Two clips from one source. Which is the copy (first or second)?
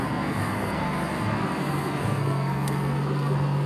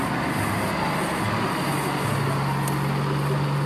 first